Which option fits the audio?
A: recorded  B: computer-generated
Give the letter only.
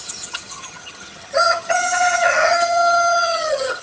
B